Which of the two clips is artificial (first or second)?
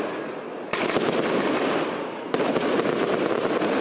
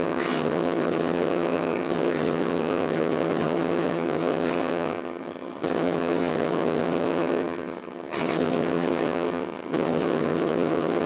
second